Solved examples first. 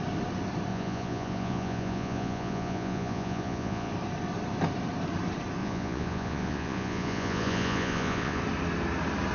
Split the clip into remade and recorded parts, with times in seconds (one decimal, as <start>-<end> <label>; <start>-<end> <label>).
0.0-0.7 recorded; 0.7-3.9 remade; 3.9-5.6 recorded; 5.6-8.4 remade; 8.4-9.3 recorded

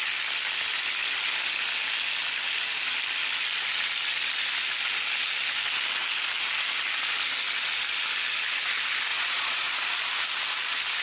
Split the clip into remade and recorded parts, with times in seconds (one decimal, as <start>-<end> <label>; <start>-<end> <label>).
0.0-9.1 recorded; 9.1-9.7 remade; 9.7-11.0 recorded

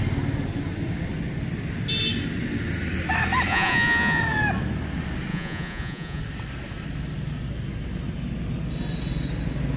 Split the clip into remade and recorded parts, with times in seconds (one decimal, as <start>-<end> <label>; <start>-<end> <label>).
0.0-3.5 recorded; 3.5-4.2 remade; 4.2-5.3 recorded; 5.3-6.2 remade; 6.2-9.8 recorded

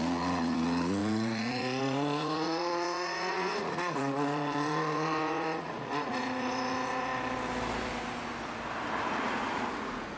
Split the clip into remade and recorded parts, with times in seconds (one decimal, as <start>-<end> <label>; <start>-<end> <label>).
0.0-7.1 remade; 7.1-9.0 recorded; 9.0-10.2 remade

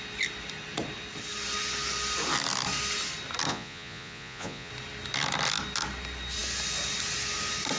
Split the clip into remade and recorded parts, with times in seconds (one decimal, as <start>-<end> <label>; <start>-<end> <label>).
0.0-3.5 recorded; 3.5-4.7 remade; 4.7-7.8 recorded